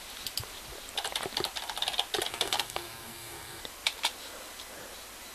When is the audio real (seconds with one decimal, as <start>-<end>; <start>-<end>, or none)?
0.0-2.3; 3.6-5.3